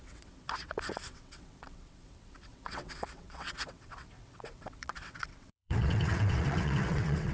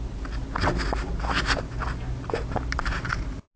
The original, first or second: second